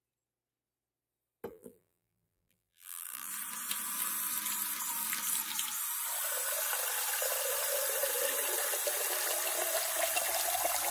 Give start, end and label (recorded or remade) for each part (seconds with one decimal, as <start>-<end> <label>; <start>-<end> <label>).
0.0-1.5 recorded; 1.5-3.3 remade; 3.3-10.9 recorded